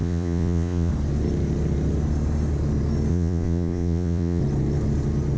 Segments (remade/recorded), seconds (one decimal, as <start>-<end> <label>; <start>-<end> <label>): 0.0-0.9 remade; 0.9-3.1 recorded; 3.1-4.4 remade; 4.4-5.4 recorded